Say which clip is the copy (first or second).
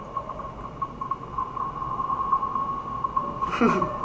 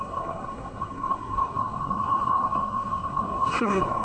second